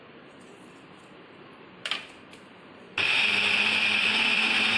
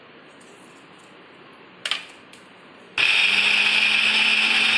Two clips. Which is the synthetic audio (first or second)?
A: first